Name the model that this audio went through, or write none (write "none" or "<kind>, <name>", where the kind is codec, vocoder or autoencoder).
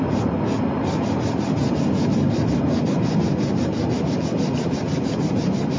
none